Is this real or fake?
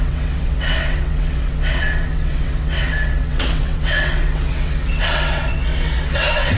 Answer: fake